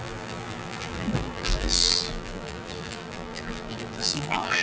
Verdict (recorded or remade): remade